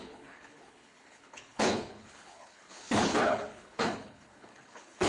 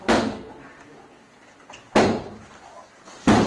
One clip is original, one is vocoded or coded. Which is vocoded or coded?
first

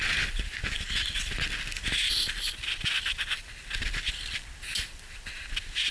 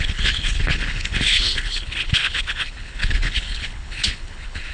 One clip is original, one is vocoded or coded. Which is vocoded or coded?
second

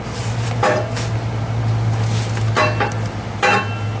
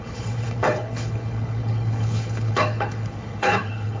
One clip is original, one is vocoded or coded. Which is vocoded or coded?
second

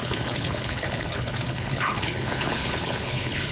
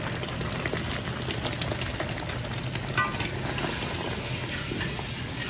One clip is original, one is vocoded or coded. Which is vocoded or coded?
first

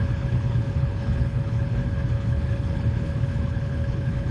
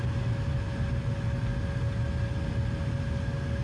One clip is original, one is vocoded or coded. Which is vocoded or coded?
first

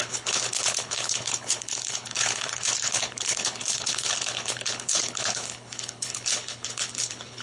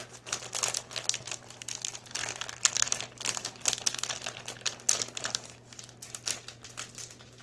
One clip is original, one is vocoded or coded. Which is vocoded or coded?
first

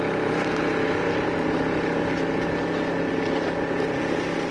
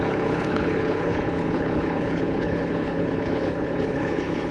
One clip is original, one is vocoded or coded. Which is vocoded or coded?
second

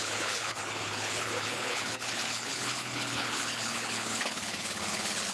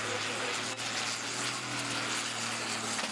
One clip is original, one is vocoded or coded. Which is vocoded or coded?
first